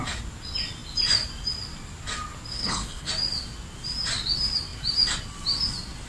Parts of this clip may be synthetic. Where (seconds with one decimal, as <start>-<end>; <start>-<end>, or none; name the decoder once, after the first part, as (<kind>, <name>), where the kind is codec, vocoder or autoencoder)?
2.5-3.1 (codec, HILCodec)

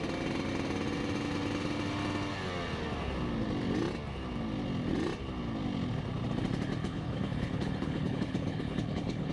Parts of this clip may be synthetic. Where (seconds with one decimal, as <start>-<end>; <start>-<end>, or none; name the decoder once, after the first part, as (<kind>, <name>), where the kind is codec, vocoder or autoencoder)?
6.8-9.3 (codec, HILCodec)